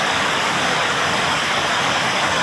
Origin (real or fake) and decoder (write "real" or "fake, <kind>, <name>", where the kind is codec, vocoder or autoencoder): fake, codec, DAC